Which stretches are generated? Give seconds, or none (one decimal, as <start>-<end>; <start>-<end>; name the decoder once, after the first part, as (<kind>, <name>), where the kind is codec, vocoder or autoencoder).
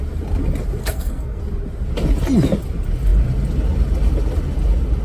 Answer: 0.8-1.4 (codec, SNAC)